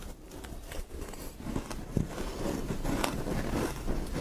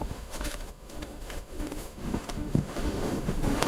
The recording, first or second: first